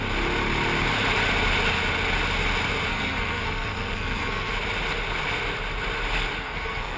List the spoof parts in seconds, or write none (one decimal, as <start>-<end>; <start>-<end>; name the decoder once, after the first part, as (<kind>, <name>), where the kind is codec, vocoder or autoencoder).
2.9-4.5 (codec, SNAC); 6.4-7.0